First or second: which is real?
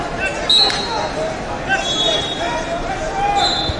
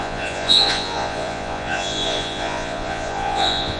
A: first